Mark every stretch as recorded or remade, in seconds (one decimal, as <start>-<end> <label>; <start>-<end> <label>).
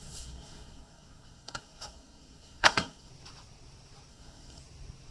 0.0-3.1 remade; 3.1-4.1 recorded; 4.1-4.6 remade; 4.6-5.1 recorded